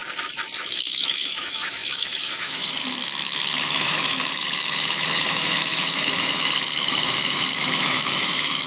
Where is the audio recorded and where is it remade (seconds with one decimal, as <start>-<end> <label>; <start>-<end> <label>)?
0.0-0.6 recorded; 0.6-8.7 remade